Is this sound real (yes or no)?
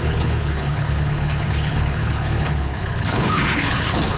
no